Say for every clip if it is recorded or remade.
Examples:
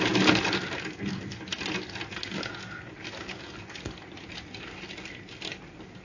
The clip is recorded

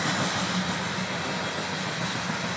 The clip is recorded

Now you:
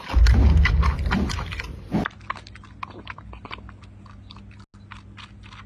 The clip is recorded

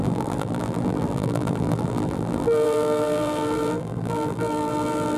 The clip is remade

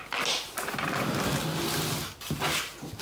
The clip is recorded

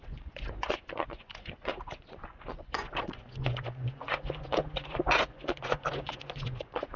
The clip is remade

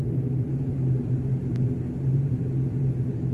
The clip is remade